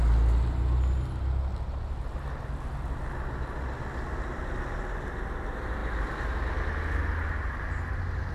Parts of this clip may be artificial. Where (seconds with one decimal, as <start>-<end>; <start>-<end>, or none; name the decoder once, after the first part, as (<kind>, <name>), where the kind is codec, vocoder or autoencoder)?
none